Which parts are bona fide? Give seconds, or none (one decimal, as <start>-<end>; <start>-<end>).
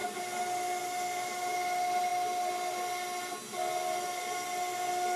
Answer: 0.0-5.2